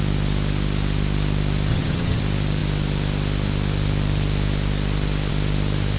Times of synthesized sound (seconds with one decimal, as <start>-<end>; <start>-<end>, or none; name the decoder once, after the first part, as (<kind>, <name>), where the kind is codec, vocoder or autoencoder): 1.7-2.2 (vocoder, HiFi-GAN)